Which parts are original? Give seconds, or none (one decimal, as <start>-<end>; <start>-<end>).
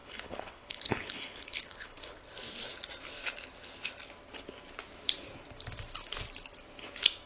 2.3-7.3